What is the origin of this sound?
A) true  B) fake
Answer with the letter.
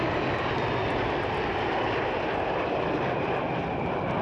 A